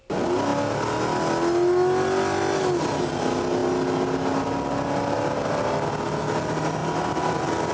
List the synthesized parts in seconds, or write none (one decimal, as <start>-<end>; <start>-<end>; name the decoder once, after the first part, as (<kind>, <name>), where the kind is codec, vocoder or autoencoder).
none